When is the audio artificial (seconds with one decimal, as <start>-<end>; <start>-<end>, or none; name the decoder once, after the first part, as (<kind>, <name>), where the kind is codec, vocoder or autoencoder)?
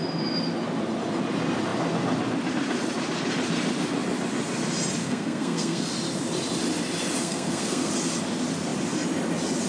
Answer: 5.0-5.9 (codec, SNAC); 7.2-7.9